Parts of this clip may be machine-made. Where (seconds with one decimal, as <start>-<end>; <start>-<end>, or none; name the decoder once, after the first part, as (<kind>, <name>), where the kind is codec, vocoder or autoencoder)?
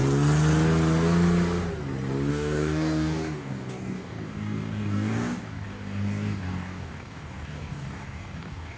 2.3-8.8 (codec, DAC)